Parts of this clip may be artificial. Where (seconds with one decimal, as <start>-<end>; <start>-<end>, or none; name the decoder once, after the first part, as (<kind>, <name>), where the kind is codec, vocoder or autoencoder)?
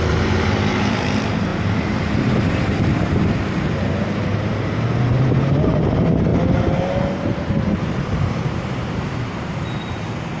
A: 0.0-6.3 (vocoder, BigVGAN v2); 7.2-10.4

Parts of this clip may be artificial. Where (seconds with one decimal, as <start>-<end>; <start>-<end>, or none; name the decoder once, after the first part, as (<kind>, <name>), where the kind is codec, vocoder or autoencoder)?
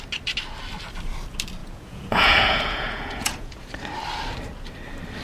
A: 1.6-3.7 (vocoder, Vocos)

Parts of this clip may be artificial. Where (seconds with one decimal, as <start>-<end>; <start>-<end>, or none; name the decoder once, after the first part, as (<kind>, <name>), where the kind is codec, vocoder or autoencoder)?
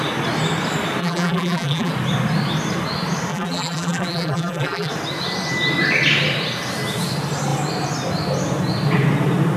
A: 1.0-1.9 (vocoder, BigVGAN v2); 3.3-4.9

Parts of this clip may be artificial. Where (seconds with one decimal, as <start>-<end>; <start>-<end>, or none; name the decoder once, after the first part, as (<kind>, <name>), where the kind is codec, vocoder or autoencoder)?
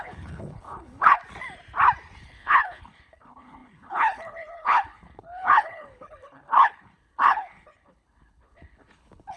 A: 0.0-1.2 (codec, HILCodec); 2.2-9.4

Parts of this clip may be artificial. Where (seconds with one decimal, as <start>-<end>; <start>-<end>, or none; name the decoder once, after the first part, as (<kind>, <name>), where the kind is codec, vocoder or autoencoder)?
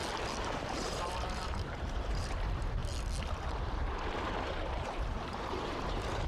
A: 0.6-2.8 (vocoder, BigVGAN v2); 4.2-6.3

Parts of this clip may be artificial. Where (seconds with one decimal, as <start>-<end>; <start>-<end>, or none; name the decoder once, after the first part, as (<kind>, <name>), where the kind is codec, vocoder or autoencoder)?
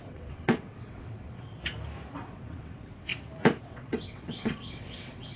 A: 0.0-1.5 (vocoder, WaveNeXt); 2.2-3.1; 3.6-5.4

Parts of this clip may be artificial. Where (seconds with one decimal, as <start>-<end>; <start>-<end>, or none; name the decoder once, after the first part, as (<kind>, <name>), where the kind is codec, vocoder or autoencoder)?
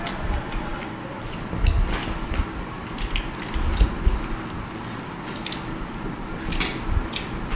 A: none